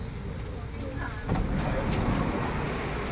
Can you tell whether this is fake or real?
real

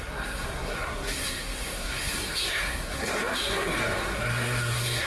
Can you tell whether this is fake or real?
fake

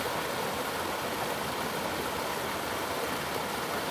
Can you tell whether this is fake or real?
real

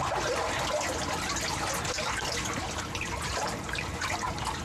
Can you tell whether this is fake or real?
real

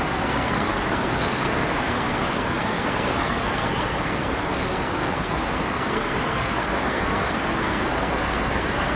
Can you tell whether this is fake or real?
fake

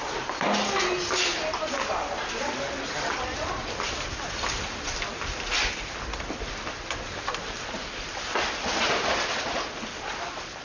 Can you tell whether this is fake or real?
real